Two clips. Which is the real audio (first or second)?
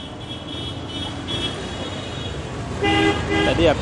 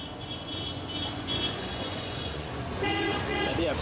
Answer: first